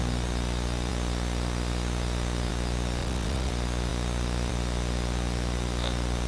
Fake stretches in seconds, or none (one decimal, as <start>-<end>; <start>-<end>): 3.0-3.5